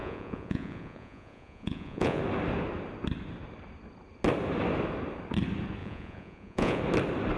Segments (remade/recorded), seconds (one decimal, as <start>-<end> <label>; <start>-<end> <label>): 0.0-2.2 remade; 2.2-5.8 recorded; 5.8-6.8 remade; 6.8-7.4 recorded